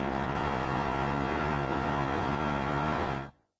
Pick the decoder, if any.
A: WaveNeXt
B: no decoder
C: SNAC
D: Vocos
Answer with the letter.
D